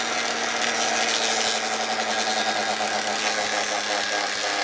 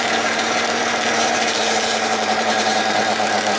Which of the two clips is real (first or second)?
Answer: first